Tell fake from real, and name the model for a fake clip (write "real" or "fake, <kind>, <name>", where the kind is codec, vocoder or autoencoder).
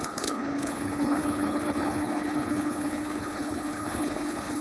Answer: fake, codec, HILCodec